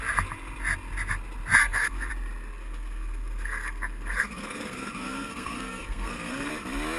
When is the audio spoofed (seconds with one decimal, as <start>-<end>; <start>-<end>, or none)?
1.6-2.1; 2.5-6.5